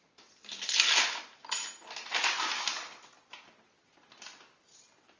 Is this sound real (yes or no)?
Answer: yes